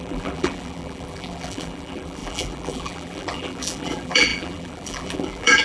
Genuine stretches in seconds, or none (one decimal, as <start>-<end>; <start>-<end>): none